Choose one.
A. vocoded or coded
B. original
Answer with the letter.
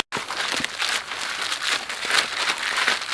B